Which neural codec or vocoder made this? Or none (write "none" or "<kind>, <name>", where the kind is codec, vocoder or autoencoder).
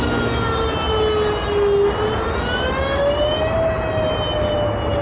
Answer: none